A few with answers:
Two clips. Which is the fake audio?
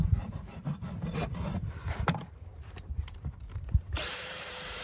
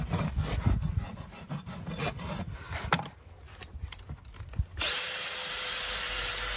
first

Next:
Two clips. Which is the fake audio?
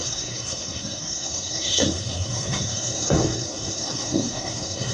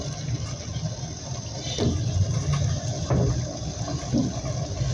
first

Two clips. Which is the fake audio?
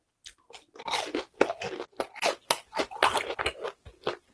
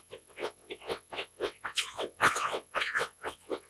second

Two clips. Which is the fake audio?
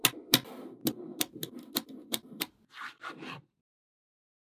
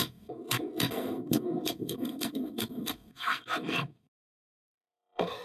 second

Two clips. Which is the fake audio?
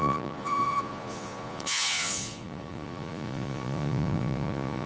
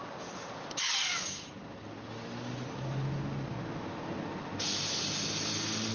first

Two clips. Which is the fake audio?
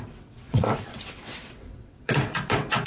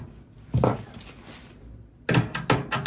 first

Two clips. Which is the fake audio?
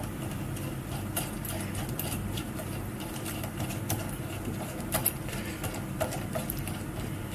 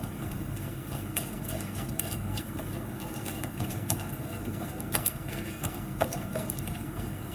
second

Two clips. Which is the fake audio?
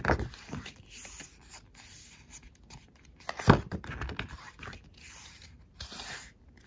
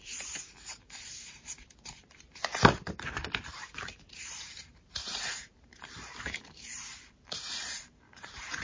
second